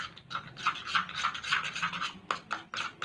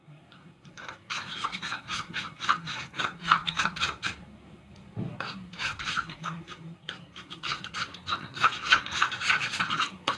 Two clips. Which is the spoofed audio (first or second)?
second